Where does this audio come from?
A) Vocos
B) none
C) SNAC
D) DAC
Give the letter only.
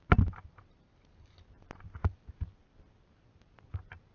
B